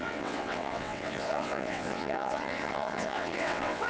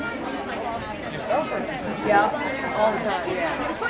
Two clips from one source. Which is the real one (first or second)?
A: second